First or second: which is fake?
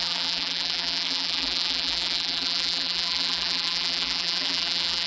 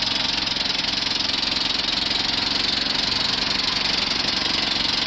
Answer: first